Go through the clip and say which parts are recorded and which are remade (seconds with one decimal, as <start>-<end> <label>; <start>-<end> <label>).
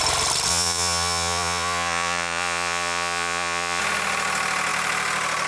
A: 0.0-0.5 recorded; 0.5-3.8 remade; 3.8-5.5 recorded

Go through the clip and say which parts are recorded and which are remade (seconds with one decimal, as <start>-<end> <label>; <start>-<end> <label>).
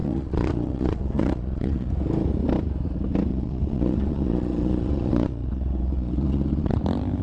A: 0.0-1.9 remade; 1.9-3.3 recorded; 3.3-6.8 remade; 6.8-7.2 recorded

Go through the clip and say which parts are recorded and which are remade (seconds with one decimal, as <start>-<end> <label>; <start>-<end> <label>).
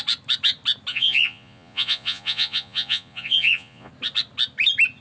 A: 0.0-0.9 recorded; 0.9-3.9 remade; 3.9-5.0 recorded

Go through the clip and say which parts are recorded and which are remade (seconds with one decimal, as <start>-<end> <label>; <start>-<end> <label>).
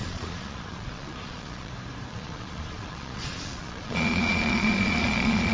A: 0.0-1.7 remade; 1.7-2.1 recorded; 2.1-5.5 remade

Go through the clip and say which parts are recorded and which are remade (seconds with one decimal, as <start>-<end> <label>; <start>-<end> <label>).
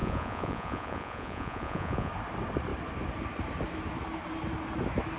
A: 0.0-2.1 remade; 2.1-5.2 recorded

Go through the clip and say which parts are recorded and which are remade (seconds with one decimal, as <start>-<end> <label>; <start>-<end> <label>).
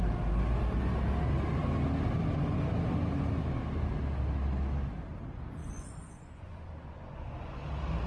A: 0.0-5.6 recorded; 5.6-7.6 remade; 7.6-8.1 recorded